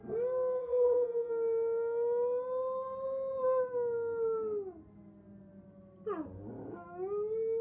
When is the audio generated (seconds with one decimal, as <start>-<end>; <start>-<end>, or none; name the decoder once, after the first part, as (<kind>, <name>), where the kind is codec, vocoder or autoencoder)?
0.6-1.3 (vocoder, BigVGAN v2)